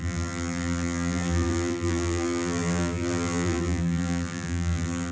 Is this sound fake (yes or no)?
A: yes